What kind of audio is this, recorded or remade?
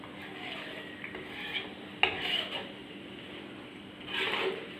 recorded